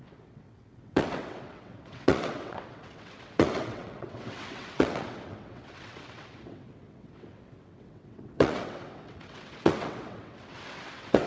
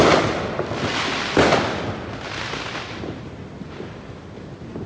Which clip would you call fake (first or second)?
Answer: first